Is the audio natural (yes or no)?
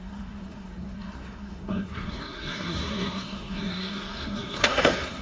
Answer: no